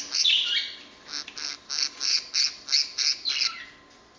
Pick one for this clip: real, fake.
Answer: real